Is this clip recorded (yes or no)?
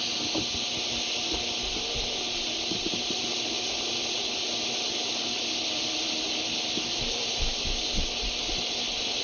yes